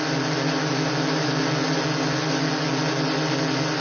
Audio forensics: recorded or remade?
recorded